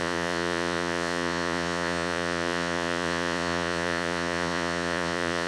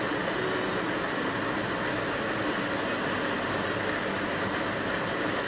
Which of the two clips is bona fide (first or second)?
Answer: second